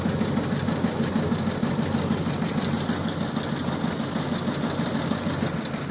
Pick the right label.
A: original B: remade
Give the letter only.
A